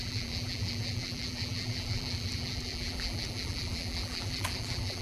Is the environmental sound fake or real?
fake